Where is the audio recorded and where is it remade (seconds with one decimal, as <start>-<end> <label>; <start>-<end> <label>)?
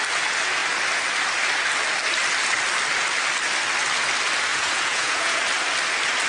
0.0-4.5 recorded; 4.5-5.4 remade; 5.4-6.3 recorded